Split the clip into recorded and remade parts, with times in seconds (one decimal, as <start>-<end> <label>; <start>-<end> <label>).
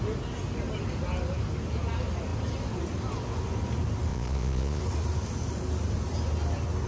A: 0.0-4.1 recorded; 4.1-4.8 remade; 4.8-6.9 recorded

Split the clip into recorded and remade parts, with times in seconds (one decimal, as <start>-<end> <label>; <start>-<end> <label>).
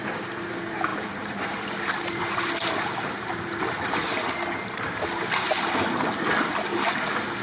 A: 0.0-0.9 recorded; 0.9-2.4 remade; 2.4-7.4 recorded